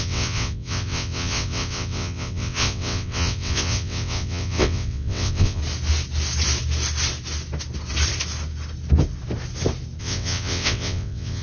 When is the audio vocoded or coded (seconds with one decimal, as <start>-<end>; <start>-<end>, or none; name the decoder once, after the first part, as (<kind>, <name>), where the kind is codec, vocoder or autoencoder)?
0.0-5.6 (vocoder, WaveNeXt); 10.0-11.4